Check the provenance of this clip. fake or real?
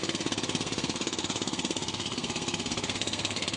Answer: fake